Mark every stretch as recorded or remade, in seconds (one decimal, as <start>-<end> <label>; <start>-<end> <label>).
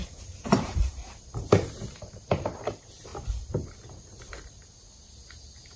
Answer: 0.0-1.3 remade; 1.3-1.8 recorded; 1.8-2.6 remade; 2.6-5.8 recorded